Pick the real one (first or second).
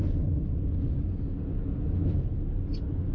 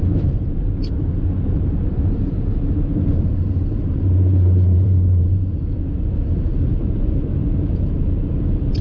first